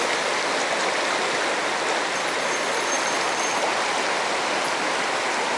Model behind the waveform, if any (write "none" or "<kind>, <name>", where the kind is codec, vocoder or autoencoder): none